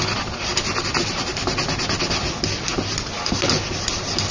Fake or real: real